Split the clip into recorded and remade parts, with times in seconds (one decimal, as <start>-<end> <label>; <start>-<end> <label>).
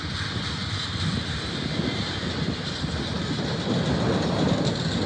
0.0-5.1 recorded